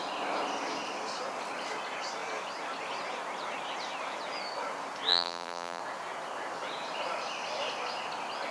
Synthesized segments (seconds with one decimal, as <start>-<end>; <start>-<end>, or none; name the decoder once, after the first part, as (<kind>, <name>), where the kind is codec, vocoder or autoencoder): 5.1-5.8 (vocoder, BigVGAN v2)